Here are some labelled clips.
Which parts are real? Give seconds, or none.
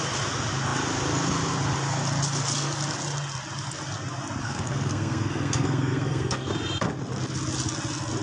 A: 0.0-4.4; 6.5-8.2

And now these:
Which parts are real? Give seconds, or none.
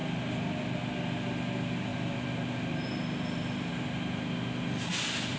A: 0.0-5.4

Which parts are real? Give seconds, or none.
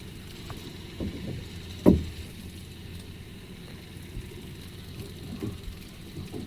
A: 0.0-6.5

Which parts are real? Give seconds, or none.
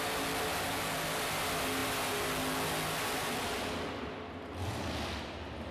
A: 0.0-5.7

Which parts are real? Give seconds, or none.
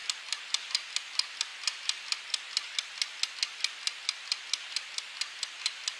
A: 0.0-6.0